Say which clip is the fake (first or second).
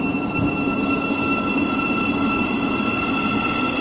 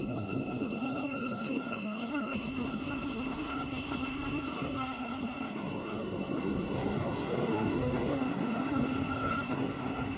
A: second